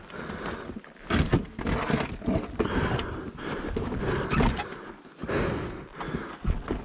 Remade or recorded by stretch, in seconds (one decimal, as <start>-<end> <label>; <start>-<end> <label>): 0.0-6.8 recorded